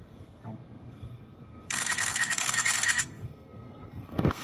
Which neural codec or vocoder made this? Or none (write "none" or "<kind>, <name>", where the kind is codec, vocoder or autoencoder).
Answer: codec, SNAC